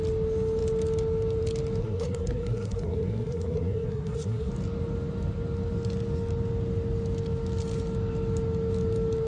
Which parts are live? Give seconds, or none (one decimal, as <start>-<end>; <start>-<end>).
0.0-1.8; 4.5-9.3

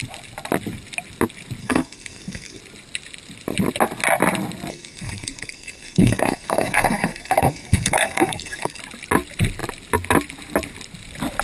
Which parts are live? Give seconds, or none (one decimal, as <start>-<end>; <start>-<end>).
0.0-1.6; 2.6-4.7; 8.8-11.4